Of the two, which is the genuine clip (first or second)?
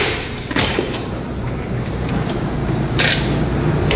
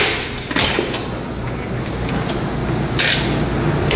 second